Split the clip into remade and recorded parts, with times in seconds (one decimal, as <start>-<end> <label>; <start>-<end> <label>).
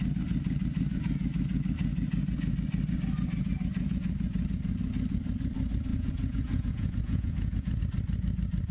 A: 0.0-5.9 recorded; 5.9-7.8 remade; 7.8-8.7 recorded